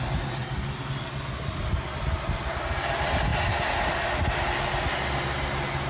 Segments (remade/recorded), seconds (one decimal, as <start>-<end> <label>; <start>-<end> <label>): 0.0-5.9 recorded